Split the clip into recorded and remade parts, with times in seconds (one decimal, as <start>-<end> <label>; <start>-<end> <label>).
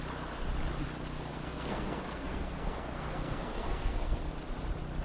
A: 0.0-1.3 recorded; 1.3-4.3 remade; 4.3-5.0 recorded